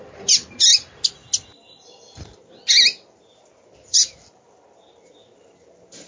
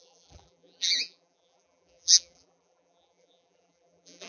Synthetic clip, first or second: second